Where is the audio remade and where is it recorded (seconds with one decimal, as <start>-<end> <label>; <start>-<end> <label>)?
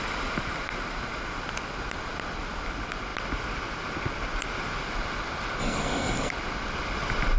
0.0-5.6 recorded; 5.6-6.3 remade; 6.3-7.4 recorded